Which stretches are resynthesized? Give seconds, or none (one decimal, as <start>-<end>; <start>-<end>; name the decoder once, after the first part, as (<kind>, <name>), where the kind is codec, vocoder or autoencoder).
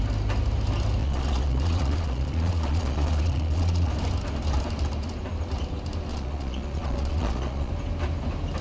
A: 1.0-3.9 (vocoder, Vocos); 6.1-7.7